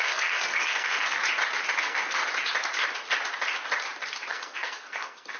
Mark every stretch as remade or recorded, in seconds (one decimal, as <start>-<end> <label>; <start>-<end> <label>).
0.0-1.2 remade; 1.2-1.8 recorded; 1.8-2.2 remade; 2.2-4.3 recorded; 4.3-5.4 remade